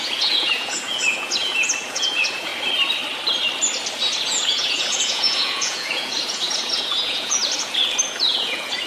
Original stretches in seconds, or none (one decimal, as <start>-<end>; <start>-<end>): 2.5-4.1; 7.4-8.1